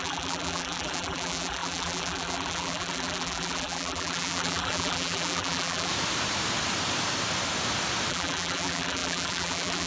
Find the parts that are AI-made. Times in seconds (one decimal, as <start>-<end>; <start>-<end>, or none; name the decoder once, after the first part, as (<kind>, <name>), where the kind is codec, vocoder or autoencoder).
0.0-5.9 (vocoder, BigVGAN v2); 8.1-9.9